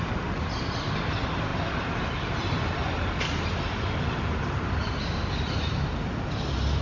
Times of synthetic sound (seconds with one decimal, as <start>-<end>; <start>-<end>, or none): none